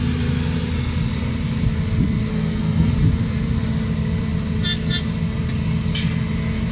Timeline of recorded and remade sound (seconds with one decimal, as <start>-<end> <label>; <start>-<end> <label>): 0.0-2.3 recorded; 2.3-2.9 remade; 2.9-6.7 recorded